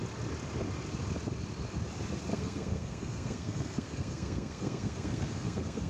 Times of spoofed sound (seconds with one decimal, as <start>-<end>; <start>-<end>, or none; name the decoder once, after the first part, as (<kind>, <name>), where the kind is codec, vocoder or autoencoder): 2.3-5.9 (codec, SNAC)